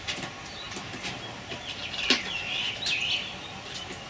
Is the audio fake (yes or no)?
no